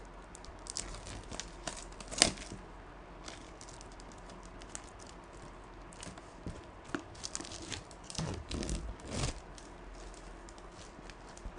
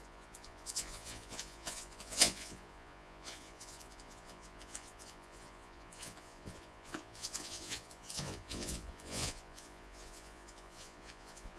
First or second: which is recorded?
first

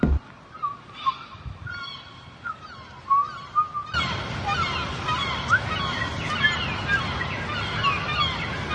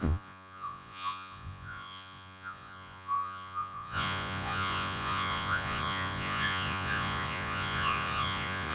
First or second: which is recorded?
first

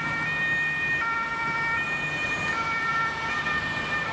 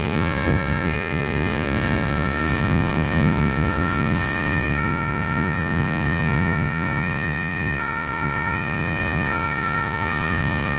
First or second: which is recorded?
first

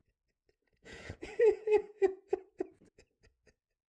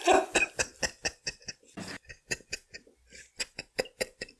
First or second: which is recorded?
second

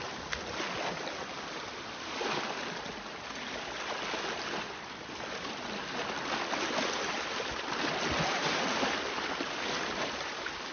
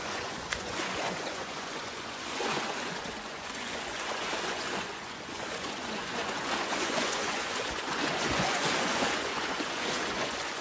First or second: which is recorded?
first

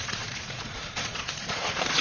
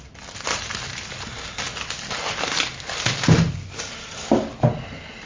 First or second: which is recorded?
second